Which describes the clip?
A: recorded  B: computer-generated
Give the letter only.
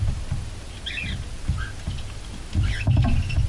A